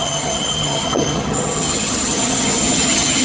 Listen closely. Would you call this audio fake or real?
fake